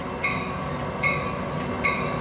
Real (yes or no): yes